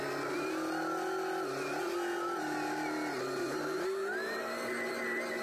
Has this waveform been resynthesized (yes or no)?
no